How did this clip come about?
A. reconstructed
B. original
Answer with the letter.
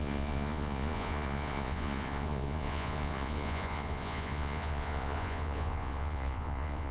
A